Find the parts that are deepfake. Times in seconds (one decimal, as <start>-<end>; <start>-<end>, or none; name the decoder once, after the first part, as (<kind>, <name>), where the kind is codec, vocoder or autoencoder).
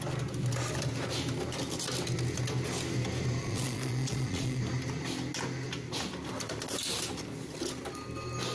3.4-4.6 (vocoder, Vocos)